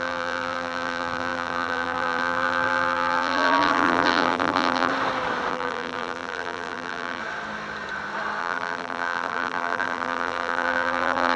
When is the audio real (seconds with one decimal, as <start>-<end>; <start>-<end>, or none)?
4.9-5.5; 7.2-8.4